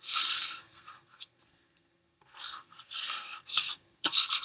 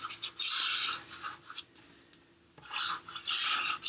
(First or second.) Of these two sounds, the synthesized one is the first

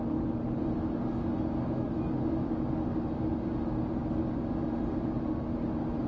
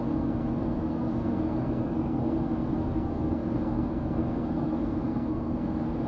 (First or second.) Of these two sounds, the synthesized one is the second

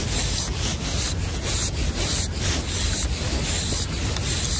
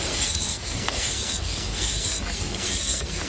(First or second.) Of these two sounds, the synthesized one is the second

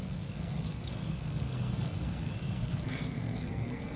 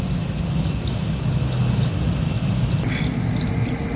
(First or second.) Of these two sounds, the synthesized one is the first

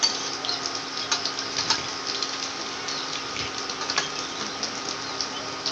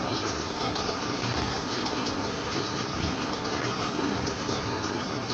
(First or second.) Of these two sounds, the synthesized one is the second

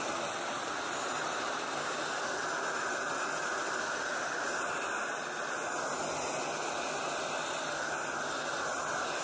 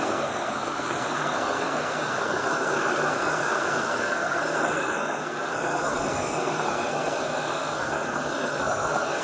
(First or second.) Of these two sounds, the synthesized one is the second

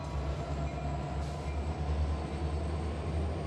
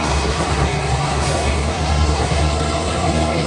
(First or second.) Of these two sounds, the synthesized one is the second